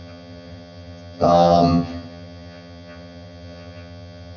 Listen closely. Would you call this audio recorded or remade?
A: remade